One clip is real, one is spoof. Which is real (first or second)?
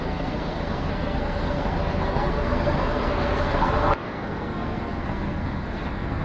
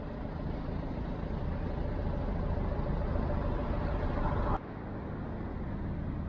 second